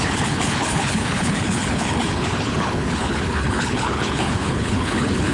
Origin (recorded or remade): remade